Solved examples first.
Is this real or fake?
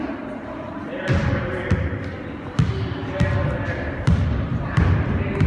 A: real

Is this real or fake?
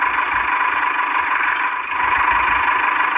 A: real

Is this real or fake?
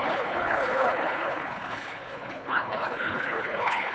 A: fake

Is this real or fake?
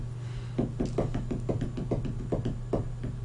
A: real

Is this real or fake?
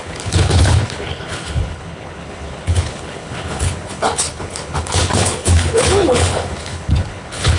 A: fake